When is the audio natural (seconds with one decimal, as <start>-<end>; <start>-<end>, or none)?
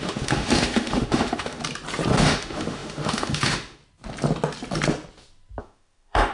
1.6-2.1; 3.8-5.6